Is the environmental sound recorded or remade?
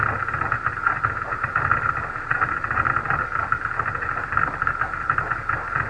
remade